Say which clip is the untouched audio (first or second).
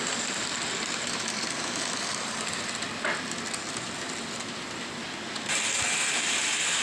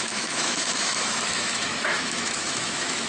first